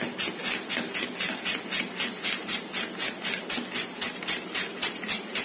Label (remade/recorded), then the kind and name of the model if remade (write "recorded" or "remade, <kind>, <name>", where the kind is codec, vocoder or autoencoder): recorded